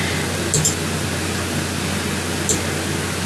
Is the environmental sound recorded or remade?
recorded